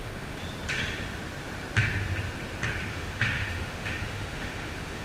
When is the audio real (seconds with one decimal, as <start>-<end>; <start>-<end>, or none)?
0.4-2.9